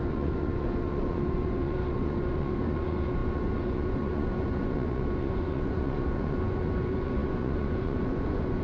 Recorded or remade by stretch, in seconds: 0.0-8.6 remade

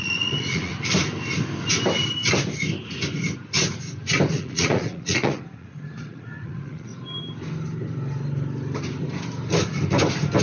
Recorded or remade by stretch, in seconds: 0.0-0.7 remade; 0.7-4.3 recorded; 4.3-6.9 remade; 6.9-10.4 recorded

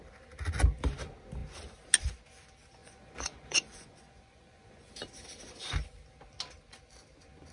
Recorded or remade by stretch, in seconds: 0.0-2.8 recorded; 2.8-4.9 remade; 4.9-7.5 recorded

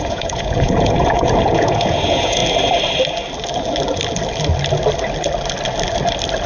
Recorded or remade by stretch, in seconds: 0.0-2.4 remade; 2.4-6.5 recorded

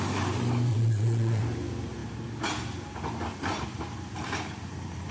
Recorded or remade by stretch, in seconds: 0.0-0.7 recorded; 0.7-1.4 remade; 1.4-5.1 recorded

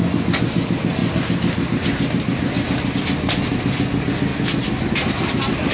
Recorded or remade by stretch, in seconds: 0.0-5.7 recorded